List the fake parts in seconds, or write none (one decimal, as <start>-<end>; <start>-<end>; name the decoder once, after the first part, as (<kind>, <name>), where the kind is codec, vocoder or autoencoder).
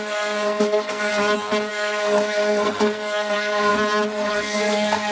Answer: 0.0-1.1 (codec, SNAC); 1.7-3.7; 4.3-5.1